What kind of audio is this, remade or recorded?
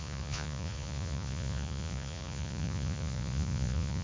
remade